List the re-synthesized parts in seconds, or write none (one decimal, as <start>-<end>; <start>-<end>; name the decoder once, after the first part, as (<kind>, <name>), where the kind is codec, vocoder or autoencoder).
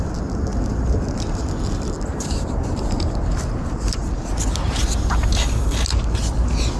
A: 0.5-1.1 (vocoder, BigVGAN v2); 2.1-3.2